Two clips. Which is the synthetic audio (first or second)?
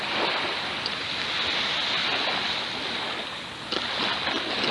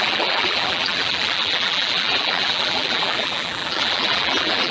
second